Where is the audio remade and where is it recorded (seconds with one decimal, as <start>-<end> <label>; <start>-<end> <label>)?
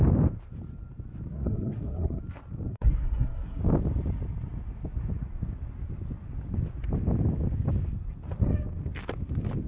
0.0-1.3 recorded; 1.3-2.2 remade; 2.2-2.7 recorded; 2.7-3.6 remade; 3.6-9.7 recorded